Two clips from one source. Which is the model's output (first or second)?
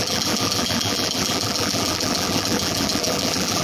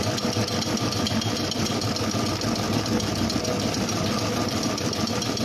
first